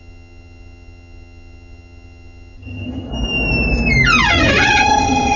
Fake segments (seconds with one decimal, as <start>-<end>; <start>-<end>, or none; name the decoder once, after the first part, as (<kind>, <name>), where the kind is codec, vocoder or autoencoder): 0.0-3.1 (vocoder, HiFi-GAN); 4.3-5.4